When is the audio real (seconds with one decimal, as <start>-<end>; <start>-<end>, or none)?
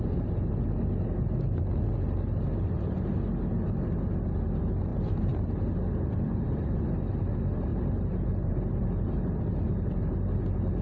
0.0-4.9; 5.4-7.7; 8.5-10.8